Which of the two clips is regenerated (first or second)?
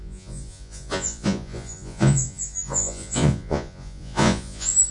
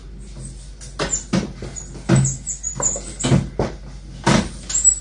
first